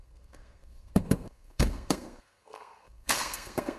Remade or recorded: remade